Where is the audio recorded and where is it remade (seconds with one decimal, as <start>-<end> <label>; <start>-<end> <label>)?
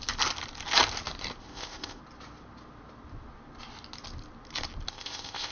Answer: 0.0-1.4 recorded; 1.4-2.0 remade; 2.0-4.9 recorded; 4.9-5.5 remade